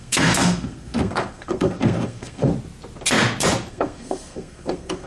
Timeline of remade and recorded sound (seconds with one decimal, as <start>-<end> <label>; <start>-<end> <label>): 0.0-2.5 remade; 2.5-3.7 recorded; 3.7-5.1 remade